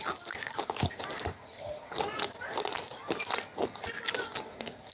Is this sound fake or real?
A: real